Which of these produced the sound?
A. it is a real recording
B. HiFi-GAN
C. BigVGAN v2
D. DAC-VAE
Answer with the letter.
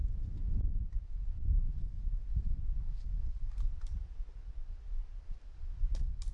A